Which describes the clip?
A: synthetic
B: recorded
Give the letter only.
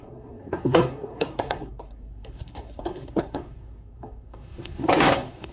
A